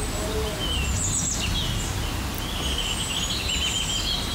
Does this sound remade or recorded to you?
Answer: recorded